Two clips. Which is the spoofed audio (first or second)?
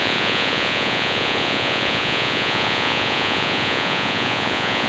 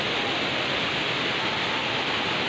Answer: first